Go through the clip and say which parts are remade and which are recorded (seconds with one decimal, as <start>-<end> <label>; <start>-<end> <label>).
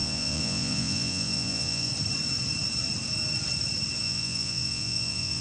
0.0-1.9 remade; 1.9-4.0 recorded; 4.0-5.4 remade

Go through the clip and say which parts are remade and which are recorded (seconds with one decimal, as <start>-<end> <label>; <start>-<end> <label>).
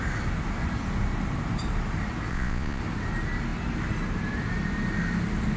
0.0-2.3 recorded; 2.3-2.8 remade; 2.8-5.6 recorded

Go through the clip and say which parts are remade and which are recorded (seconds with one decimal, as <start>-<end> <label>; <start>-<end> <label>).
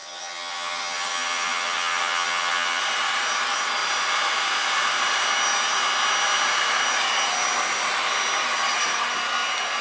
0.0-2.8 remade; 2.8-9.8 recorded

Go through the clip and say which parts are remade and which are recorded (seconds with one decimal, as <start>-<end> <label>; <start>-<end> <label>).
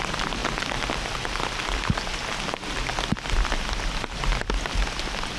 0.0-5.4 recorded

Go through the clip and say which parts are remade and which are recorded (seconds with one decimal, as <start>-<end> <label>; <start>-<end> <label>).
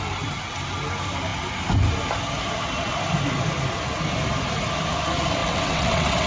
0.0-5.4 recorded; 5.4-6.3 remade